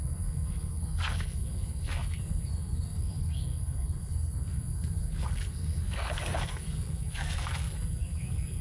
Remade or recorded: remade